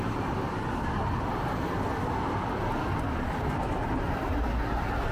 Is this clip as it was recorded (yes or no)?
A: yes